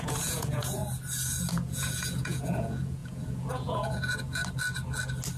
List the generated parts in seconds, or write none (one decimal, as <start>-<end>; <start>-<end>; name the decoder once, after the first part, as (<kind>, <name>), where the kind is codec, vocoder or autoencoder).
0.0-0.8 (vocoder, Vocos); 1.5-4.4